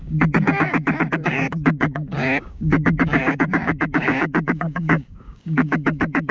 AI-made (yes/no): yes